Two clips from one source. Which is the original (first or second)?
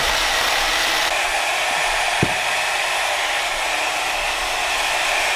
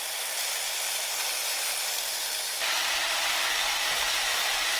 first